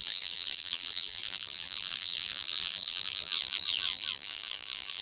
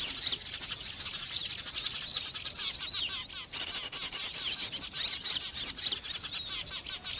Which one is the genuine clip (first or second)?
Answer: second